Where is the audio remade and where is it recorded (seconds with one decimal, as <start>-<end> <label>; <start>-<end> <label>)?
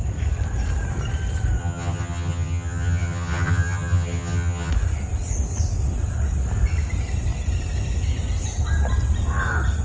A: 0.0-1.6 recorded; 1.6-4.7 remade; 4.7-9.8 recorded